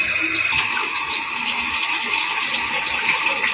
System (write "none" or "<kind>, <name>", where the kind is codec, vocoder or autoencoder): none